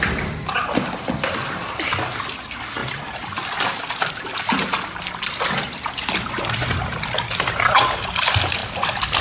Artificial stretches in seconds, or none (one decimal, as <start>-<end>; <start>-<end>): 2.8-4.1; 8.6-9.2